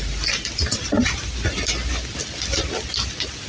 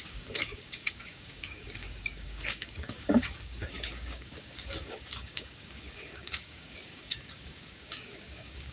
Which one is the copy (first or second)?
second